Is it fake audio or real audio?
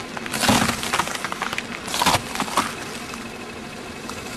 real